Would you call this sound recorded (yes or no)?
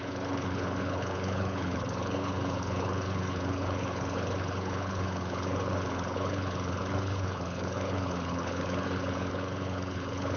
no